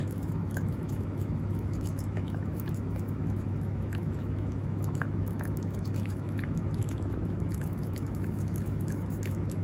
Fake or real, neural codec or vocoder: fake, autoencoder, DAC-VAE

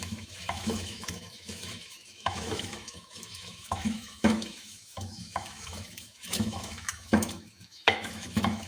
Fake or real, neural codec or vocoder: fake, autoencoder, DAC-VAE